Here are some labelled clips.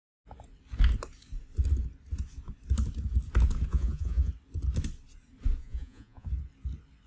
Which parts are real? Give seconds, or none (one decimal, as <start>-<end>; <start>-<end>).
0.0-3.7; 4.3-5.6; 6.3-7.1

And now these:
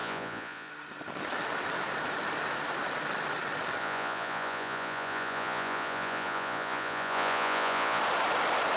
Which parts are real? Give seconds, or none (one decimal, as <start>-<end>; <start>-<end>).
0.7-3.8; 8.0-8.8

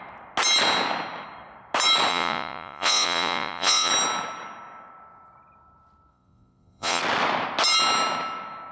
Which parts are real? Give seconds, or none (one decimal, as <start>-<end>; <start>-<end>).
0.0-2.1; 3.9-6.1; 7.0-8.7

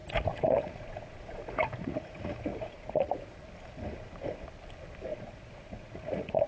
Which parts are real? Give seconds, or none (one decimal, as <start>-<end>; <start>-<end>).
3.4-5.1

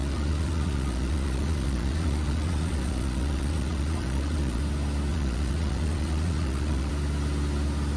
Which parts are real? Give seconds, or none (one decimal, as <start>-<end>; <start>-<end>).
4.6-5.1; 6.9-8.0

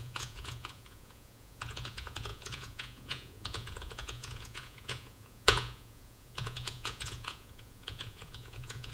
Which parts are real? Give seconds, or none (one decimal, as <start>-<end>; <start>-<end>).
none